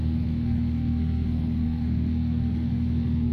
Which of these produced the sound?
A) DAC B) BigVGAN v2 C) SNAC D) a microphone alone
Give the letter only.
C